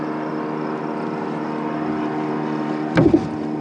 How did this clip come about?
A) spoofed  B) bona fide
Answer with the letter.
A